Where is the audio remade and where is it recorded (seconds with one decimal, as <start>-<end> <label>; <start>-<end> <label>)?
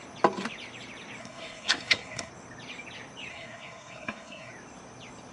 0.0-1.2 recorded; 1.2-2.3 remade; 2.3-3.3 recorded; 3.3-4.5 remade; 4.5-5.3 recorded